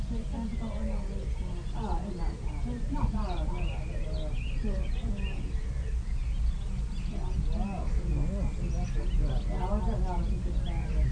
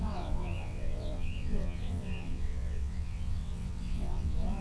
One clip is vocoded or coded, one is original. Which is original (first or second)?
first